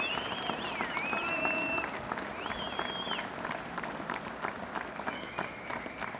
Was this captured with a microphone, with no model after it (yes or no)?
yes